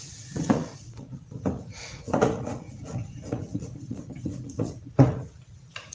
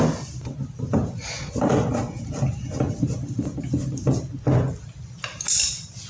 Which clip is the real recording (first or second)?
second